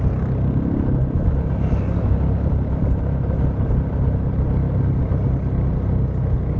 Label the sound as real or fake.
real